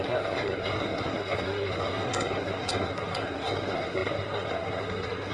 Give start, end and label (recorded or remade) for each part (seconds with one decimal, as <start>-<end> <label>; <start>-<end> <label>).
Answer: 0.0-5.3 remade